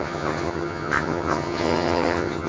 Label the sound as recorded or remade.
remade